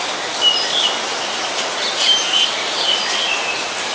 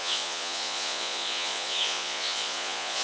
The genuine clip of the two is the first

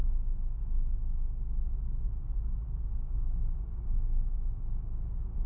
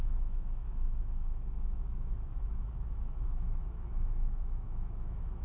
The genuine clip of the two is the first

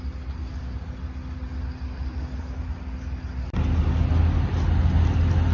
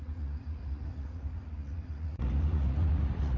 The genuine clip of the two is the first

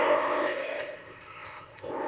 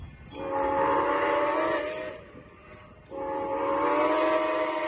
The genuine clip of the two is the second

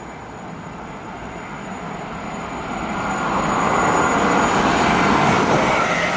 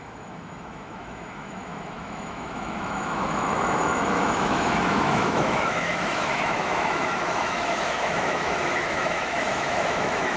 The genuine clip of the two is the first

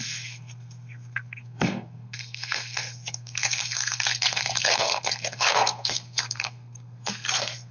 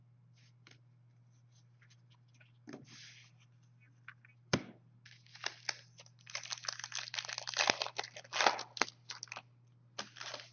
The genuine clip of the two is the second